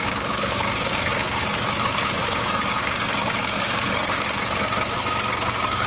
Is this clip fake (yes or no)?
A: yes